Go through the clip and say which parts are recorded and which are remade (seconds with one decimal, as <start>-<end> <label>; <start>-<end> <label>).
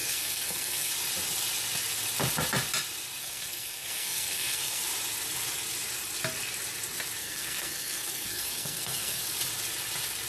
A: 0.0-0.9 remade; 0.9-3.2 recorded; 3.2-4.8 remade; 4.8-7.2 recorded; 7.2-9.2 remade; 9.2-10.3 recorded